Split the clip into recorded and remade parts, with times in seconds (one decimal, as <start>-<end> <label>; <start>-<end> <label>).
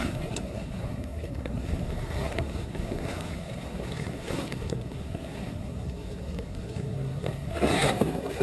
0.0-8.4 remade